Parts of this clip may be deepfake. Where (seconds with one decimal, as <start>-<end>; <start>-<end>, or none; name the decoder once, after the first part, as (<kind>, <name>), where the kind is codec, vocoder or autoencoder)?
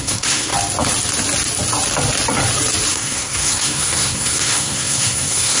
0.0-0.5 (codec, SNAC); 2.9-5.6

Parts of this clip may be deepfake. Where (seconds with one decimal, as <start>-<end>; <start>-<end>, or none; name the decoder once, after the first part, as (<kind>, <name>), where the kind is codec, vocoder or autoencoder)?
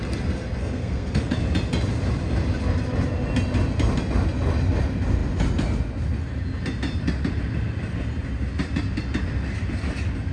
0.6-1.3 (codec, SNAC)